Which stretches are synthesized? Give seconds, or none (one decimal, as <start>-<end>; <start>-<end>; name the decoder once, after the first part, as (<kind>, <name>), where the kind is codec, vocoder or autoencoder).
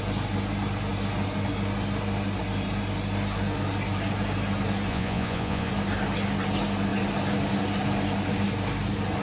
4.9-5.7 (vocoder, Vocos)